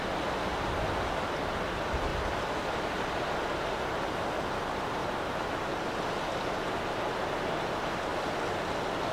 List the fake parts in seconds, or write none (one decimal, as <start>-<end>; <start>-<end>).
5.0-5.9